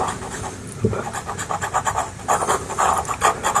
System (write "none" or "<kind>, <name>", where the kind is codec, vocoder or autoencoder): none